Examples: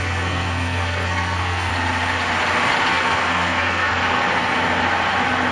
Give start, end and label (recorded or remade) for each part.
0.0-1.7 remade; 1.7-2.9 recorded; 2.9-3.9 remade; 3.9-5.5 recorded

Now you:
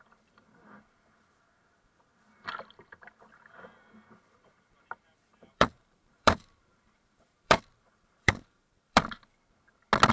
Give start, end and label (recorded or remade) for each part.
0.0-5.3 recorded; 5.3-9.0 remade; 9.0-10.1 recorded

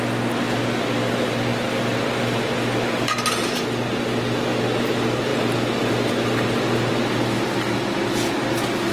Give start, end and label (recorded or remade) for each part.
0.0-8.9 recorded

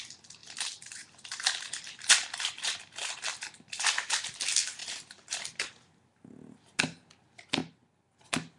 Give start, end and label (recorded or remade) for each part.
0.0-0.4 recorded; 0.4-2.8 remade; 2.8-4.8 recorded; 4.8-5.3 remade; 5.3-8.6 recorded

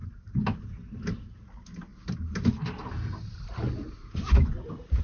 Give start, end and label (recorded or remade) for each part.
0.0-5.0 recorded

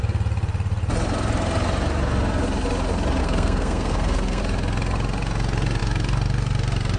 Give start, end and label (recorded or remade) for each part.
0.0-3.2 recorded; 3.2-4.4 remade; 4.4-7.0 recorded

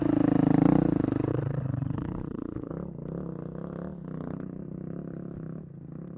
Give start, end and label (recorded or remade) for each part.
0.0-1.3 recorded; 1.3-2.7 remade; 2.7-6.2 recorded